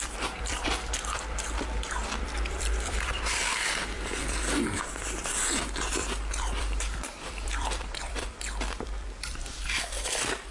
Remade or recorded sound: remade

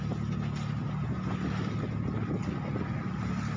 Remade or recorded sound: recorded